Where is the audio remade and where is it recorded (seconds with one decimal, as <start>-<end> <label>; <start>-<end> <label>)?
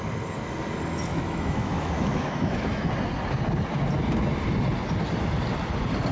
0.0-1.1 recorded; 1.1-2.9 remade; 2.9-6.1 recorded